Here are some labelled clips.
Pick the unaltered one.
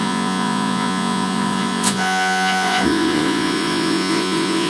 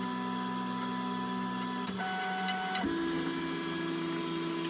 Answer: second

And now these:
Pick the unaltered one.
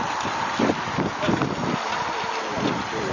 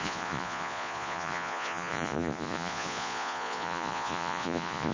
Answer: first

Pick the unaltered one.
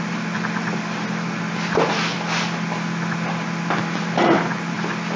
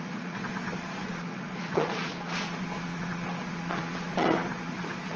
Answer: first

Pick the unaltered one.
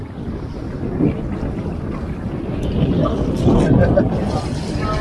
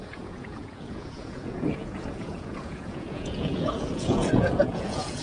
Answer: first